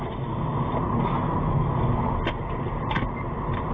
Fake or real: real